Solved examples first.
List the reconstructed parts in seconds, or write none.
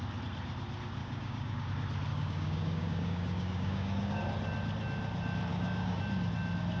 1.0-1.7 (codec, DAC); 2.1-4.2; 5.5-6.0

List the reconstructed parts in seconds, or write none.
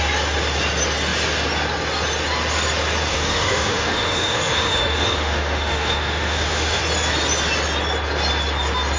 3.1-6.8 (autoencoder, DAC-VAE)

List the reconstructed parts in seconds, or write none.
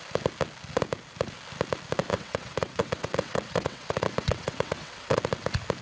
2.1-5.2 (vocoder, WaveNeXt)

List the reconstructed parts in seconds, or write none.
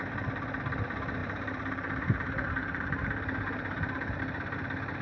1.2-4.2 (vocoder, BigVGAN v2)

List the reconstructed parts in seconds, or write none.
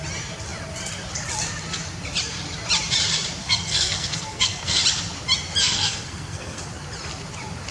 3.4-4.8 (codec, SNAC); 5.6-6.6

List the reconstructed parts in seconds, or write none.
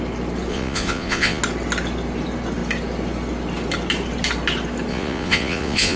0.5-1.4 (vocoder, Vocos); 4.9-6.0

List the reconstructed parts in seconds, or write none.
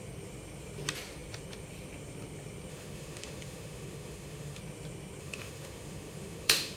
2.7-4.6 (autoencoder, DAC-VAE); 5.2-6.8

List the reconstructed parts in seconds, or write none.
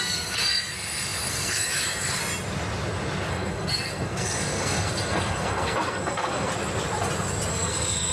0.0-2.2 (codec, SNAC); 3.3-6.5; 7.5-8.1